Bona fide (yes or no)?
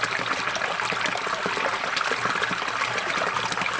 yes